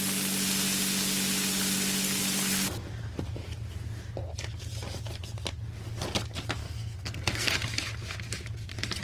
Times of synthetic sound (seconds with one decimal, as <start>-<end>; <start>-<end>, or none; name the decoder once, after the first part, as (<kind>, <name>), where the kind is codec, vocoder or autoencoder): 6.6-7.5 (codec, SNAC)